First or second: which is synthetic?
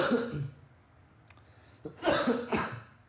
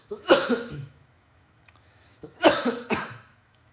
second